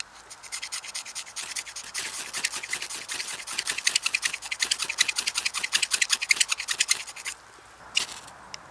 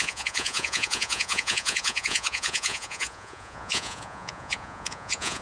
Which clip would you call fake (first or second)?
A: second